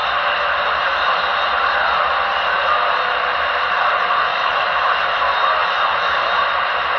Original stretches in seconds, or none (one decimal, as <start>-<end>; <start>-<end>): 0.0-4.3; 4.9-5.6; 6.1-7.0